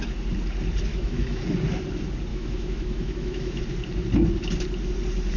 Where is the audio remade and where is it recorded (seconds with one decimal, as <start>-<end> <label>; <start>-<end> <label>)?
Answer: 0.0-0.9 recorded; 0.9-1.4 remade; 1.4-2.3 recorded; 2.3-3.6 remade; 3.6-5.4 recorded